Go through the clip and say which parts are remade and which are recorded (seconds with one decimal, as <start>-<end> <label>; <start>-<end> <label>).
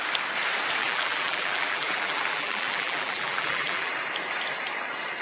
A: 0.0-0.8 recorded; 0.8-3.9 remade; 3.9-5.2 recorded